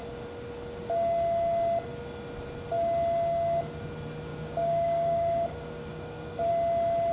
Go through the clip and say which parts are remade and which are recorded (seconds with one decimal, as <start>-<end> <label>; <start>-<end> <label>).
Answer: 0.0-4.3 recorded; 4.3-6.5 remade; 6.5-7.1 recorded